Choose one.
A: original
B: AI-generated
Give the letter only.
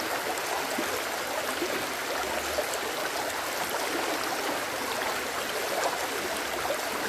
A